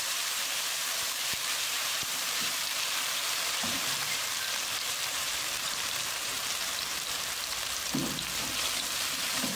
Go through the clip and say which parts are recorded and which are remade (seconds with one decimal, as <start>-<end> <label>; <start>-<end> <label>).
0.0-8.0 remade; 8.0-9.2 recorded; 9.2-9.6 remade